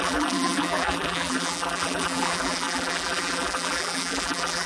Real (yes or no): no